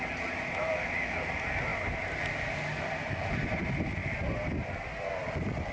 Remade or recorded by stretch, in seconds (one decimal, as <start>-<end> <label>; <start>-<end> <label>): 0.0-5.7 recorded